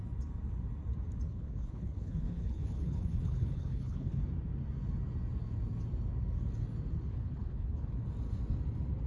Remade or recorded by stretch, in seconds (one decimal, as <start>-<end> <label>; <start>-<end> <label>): 0.0-1.3 recorded; 1.3-4.2 remade; 4.2-7.1 recorded; 7.1-7.9 remade; 7.9-9.1 recorded